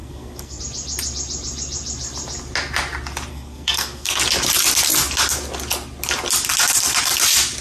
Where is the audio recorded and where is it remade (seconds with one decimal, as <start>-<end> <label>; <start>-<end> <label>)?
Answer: 0.0-0.6 remade; 0.6-3.3 recorded; 3.3-4.2 remade; 4.2-7.6 recorded